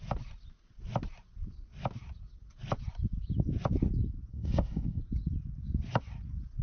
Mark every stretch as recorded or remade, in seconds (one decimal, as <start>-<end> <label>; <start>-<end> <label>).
0.0-4.3 recorded; 4.3-5.0 remade; 5.0-6.6 recorded